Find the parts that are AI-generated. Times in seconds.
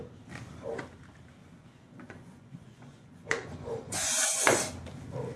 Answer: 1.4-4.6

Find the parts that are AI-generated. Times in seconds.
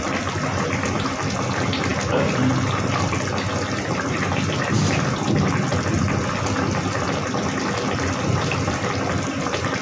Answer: none